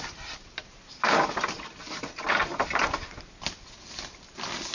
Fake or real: real